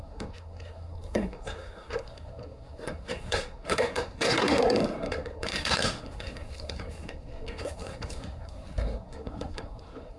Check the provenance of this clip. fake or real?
fake